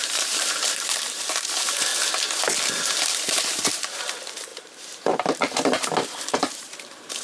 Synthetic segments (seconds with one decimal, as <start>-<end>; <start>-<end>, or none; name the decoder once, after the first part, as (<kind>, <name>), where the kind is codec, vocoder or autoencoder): 0.0-1.9 (vocoder, BigVGAN v2); 2.7-7.2